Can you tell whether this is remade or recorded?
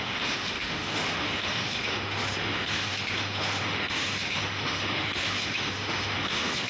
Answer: remade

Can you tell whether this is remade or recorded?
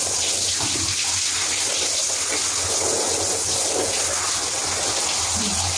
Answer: recorded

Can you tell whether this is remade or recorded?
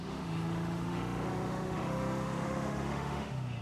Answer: remade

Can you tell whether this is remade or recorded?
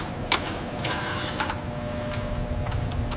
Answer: recorded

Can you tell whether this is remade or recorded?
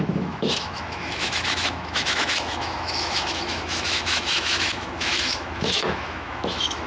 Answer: remade